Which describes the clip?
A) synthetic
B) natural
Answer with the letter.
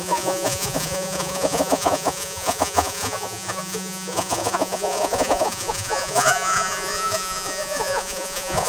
A